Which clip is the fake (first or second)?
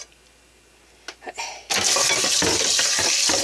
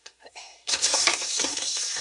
second